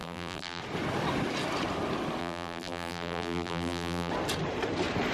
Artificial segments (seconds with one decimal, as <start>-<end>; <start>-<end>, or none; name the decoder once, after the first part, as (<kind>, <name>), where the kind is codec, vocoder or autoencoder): 0.0-0.6 (vocoder, BigVGAN v2); 2.2-4.1